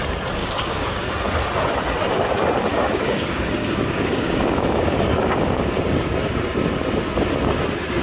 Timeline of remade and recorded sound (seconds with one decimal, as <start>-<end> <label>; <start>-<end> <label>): 0.0-0.4 recorded; 0.4-1.1 remade; 1.1-2.7 recorded; 2.7-5.8 remade; 5.8-8.0 recorded